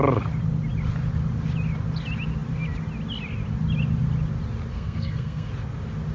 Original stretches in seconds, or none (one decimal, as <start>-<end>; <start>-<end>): 0.0-4.7; 5.5-6.1

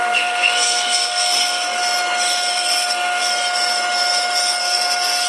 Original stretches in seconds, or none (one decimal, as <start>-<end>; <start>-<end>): 1.8-2.5; 3.2-4.6